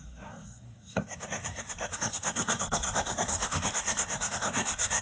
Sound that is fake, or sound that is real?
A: fake